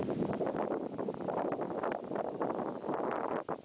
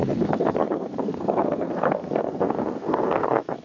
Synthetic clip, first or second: second